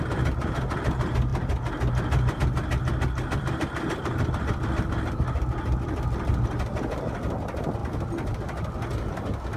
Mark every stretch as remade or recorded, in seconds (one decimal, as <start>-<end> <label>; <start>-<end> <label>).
0.0-9.6 recorded